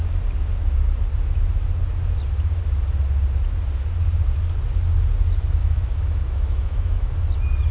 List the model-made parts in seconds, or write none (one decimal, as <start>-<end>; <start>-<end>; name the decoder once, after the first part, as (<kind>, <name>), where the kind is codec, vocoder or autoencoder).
5.6-7.1 (autoencoder, DAC-VAE)